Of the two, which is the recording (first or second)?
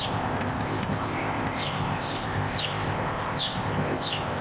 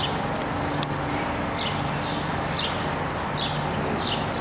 second